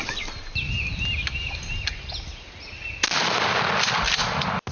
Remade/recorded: recorded